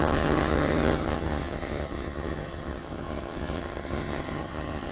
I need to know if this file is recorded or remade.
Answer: remade